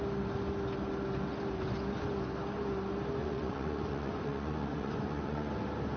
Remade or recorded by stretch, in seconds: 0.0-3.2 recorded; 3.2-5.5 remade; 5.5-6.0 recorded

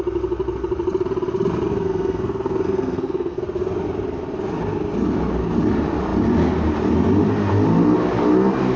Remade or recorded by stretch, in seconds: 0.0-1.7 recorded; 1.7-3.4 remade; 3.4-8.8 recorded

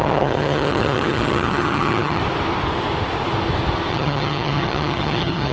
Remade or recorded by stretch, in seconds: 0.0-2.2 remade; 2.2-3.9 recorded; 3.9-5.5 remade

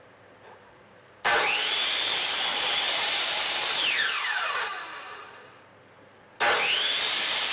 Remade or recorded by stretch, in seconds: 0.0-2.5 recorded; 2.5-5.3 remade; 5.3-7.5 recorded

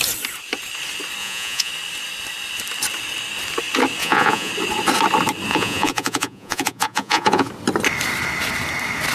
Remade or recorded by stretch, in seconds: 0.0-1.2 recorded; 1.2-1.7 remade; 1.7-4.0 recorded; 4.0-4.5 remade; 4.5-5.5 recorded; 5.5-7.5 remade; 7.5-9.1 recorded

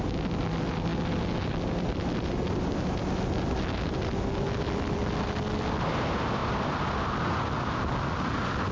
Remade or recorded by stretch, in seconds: 0.0-8.7 recorded

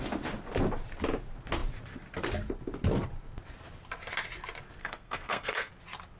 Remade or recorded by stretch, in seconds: 0.0-4.8 recorded; 4.8-5.7 remade; 5.7-6.2 recorded

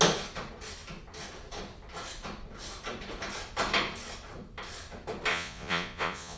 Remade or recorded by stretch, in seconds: 0.0-5.3 recorded; 5.3-6.4 remade